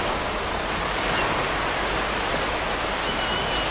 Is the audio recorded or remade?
recorded